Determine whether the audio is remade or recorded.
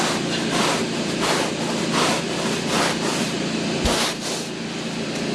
recorded